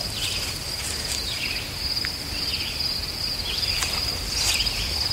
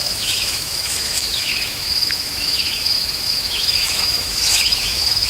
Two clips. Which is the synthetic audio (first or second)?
second